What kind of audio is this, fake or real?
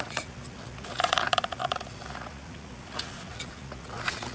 fake